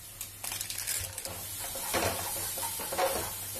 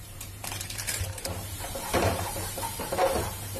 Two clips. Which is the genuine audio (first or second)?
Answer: first